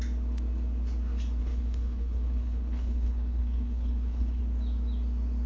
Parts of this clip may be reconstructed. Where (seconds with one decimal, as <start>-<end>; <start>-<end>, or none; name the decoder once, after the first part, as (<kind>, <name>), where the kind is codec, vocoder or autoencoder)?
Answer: 1.4-4.4 (codec, HILCodec)